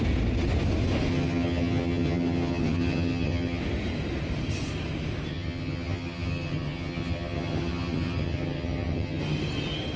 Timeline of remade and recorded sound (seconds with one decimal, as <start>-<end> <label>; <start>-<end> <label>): 0.0-1.1 recorded; 1.1-3.6 remade; 3.6-5.3 recorded; 5.3-9.2 remade; 9.2-10.0 recorded